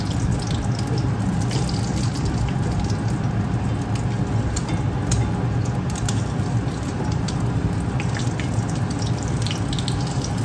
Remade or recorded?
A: recorded